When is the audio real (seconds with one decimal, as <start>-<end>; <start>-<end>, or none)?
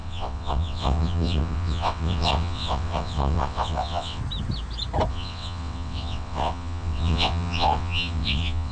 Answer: 4.2-5.1